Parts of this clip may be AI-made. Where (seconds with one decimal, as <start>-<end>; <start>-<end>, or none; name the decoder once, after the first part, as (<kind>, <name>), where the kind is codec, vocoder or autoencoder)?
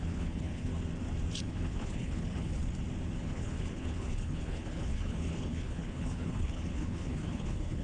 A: 0.0-0.7 (codec, HILCodec); 1.4-2.6; 3.2-7.8